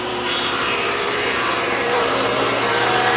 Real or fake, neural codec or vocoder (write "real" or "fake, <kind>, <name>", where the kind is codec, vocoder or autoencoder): fake, vocoder, BigVGAN v2